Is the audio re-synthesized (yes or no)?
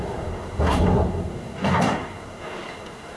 yes